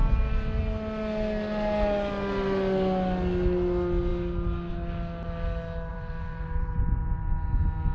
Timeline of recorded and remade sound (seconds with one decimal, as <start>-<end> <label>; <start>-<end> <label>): 0.0-5.9 recorded; 5.9-6.7 remade; 6.7-7.9 recorded